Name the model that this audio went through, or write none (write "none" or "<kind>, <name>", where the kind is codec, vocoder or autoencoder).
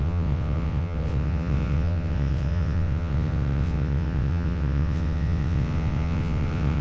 vocoder, WaveNeXt